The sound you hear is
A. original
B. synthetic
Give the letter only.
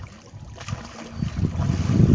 A